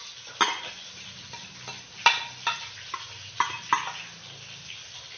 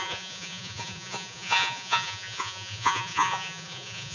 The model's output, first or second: second